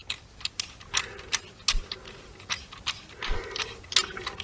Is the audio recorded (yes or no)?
yes